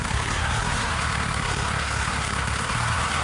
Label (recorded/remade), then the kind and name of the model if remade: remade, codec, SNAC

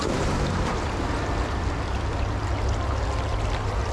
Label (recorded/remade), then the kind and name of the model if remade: recorded